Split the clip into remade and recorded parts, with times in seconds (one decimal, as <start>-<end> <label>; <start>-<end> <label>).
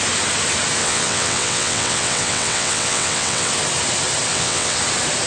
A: 0.0-0.8 recorded; 0.8-3.5 remade; 3.5-4.3 recorded; 4.3-4.8 remade; 4.8-5.3 recorded